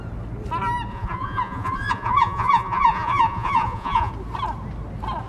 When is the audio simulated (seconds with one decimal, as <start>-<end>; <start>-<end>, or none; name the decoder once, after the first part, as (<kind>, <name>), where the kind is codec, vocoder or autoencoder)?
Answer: 0.9-4.1 (vocoder, Vocos)